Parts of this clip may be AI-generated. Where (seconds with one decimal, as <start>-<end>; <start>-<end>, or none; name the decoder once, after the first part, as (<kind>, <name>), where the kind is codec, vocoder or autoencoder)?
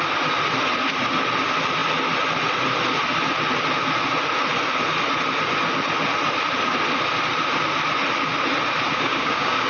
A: 8.9-9.7 (codec, DAC)